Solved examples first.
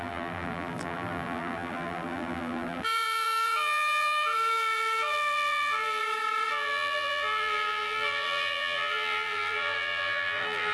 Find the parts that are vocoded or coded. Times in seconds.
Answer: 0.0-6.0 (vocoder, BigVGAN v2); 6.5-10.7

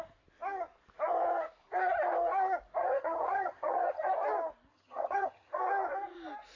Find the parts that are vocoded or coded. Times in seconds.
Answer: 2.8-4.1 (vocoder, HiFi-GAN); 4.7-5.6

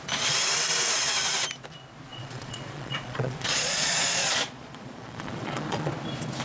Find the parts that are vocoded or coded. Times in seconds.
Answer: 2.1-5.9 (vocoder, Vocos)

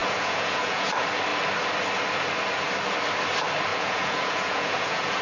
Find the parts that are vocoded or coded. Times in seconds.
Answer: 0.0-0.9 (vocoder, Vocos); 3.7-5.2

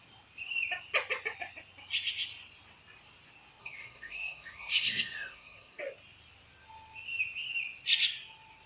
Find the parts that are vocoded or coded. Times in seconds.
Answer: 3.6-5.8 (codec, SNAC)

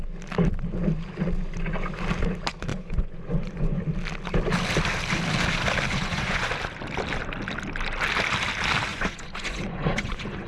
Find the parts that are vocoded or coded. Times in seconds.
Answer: 2.7-3.8 (vocoder, Vocos); 5.9-6.5; 8.9-10.5